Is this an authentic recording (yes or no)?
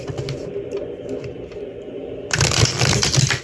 no